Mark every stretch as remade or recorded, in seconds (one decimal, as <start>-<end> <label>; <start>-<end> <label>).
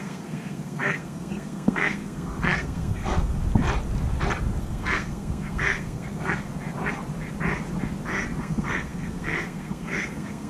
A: 0.0-3.4 remade; 3.4-4.6 recorded; 4.6-6.5 remade; 6.5-8.4 recorded; 8.4-10.5 remade